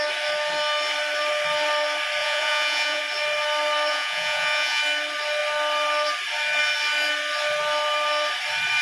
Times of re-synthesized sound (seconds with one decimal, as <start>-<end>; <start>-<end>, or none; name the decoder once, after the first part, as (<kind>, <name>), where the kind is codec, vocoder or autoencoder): 2.2-3.0 (vocoder, Vocos); 3.9-4.8